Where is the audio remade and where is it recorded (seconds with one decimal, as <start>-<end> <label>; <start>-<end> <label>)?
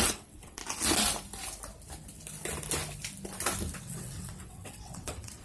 0.0-0.6 remade; 0.6-3.8 recorded; 3.8-5.4 remade